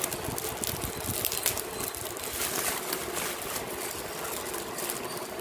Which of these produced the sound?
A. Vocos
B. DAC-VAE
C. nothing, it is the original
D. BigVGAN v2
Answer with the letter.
C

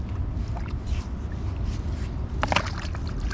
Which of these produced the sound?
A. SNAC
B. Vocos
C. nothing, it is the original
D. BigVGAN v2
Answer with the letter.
C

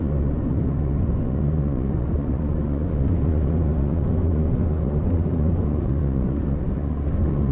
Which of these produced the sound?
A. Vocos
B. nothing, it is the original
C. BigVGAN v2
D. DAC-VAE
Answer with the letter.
A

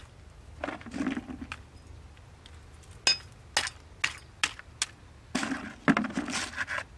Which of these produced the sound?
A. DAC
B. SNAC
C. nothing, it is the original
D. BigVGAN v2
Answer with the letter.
C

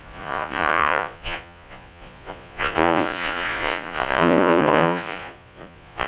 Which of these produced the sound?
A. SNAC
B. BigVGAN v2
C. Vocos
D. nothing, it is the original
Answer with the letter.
C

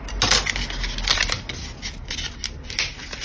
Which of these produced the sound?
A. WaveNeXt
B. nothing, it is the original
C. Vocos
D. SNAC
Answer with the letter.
B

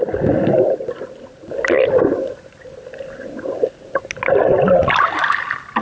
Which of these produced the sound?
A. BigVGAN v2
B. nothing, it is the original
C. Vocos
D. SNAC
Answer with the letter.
B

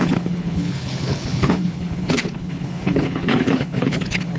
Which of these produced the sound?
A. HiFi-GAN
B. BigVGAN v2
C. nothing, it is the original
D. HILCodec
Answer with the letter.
D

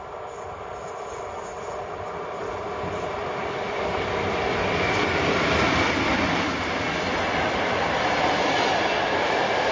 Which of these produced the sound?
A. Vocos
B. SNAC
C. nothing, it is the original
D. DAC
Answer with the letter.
C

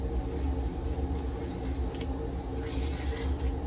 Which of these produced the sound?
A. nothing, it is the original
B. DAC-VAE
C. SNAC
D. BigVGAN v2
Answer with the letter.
A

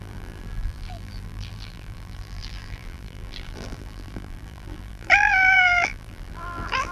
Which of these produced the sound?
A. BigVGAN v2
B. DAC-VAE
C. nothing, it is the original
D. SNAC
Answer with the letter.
A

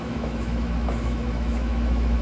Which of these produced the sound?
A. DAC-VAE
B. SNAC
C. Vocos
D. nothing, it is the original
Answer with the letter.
A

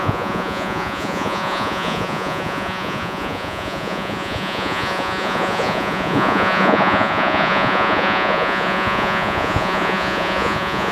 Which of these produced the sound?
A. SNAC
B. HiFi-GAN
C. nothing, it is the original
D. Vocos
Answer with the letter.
D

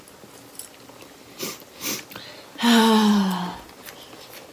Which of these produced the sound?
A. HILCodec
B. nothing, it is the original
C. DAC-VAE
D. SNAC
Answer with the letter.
B